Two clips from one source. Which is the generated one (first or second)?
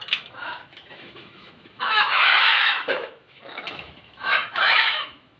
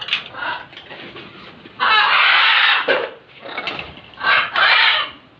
first